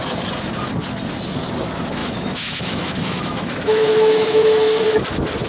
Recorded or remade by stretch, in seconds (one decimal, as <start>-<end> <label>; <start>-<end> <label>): 0.0-2.0 recorded; 2.0-4.8 remade; 4.8-5.5 recorded